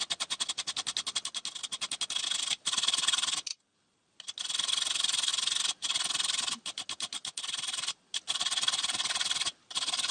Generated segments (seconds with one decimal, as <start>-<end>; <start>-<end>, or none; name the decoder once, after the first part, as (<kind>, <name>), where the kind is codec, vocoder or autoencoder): none